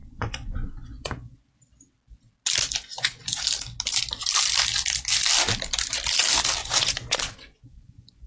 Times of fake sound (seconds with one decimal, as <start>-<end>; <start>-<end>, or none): 0.0-1.6; 2.9-3.4; 6.6-8.3